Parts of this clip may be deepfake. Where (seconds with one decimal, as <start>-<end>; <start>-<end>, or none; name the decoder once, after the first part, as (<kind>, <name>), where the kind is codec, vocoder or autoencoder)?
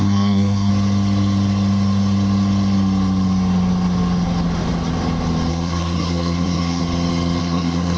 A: 0.0-0.7 (codec, SNAC); 5.5-6.8; 7.4-8.0